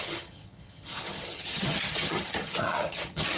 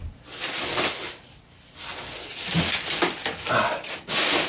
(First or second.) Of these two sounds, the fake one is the first